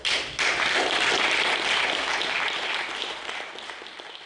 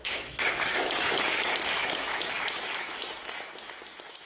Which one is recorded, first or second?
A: first